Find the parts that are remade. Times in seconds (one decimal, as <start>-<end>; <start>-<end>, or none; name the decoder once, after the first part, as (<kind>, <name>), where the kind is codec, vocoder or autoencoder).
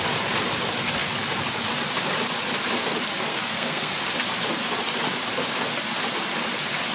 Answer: 3.3-3.9 (codec, SNAC)